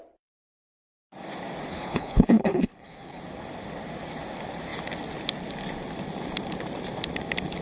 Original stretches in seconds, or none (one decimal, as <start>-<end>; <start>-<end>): 0.0-1.7; 3.2-7.6